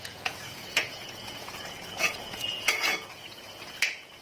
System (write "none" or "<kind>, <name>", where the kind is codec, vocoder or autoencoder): vocoder, Vocos